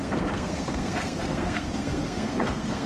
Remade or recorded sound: remade